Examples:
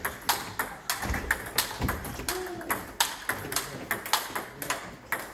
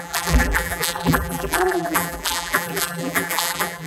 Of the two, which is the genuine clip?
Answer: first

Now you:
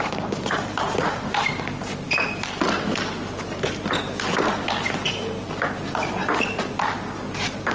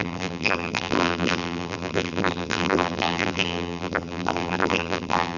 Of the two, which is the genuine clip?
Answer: first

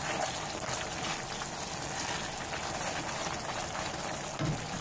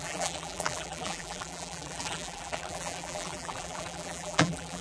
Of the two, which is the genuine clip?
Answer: first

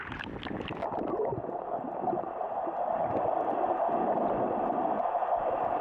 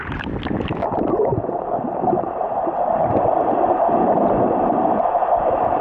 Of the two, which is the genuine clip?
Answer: first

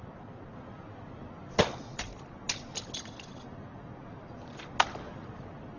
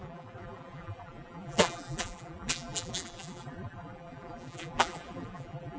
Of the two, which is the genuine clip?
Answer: first